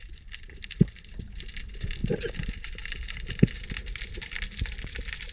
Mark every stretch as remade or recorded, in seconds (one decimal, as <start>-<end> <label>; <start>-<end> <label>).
0.0-5.3 remade